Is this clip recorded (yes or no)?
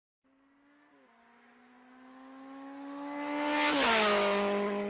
yes